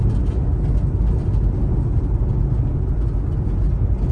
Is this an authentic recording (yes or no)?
yes